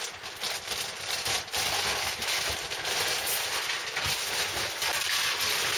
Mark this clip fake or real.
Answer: real